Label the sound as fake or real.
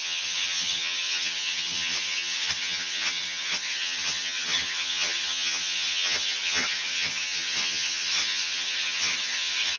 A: fake